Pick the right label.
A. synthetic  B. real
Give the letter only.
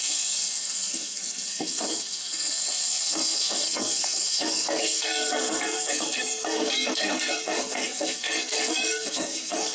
A